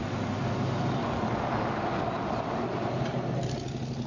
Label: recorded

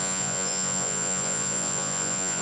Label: remade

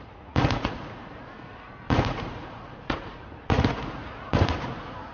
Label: remade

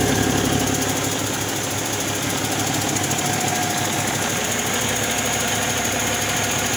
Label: recorded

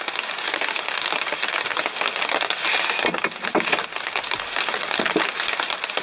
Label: recorded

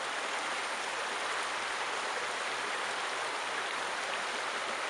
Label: recorded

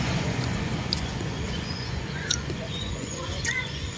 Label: remade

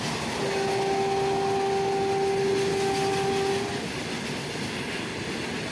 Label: recorded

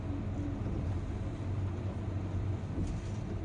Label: recorded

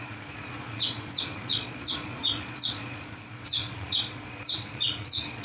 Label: remade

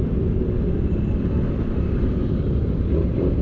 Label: remade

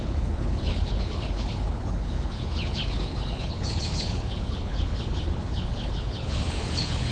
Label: remade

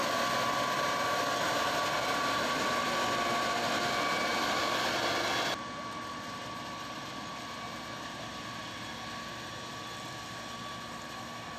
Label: recorded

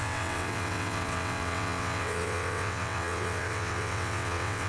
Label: remade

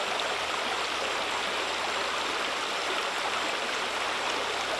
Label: recorded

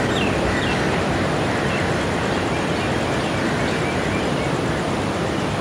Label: recorded